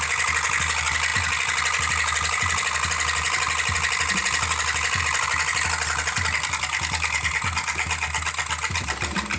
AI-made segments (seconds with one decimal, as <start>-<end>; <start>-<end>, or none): none